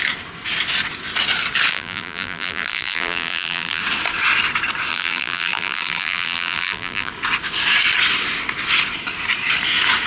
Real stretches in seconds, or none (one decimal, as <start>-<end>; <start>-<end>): 0.0-1.7; 3.8-4.9; 7.1-10.1